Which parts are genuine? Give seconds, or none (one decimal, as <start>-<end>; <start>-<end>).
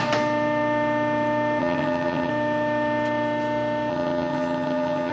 0.0-1.6; 2.3-3.9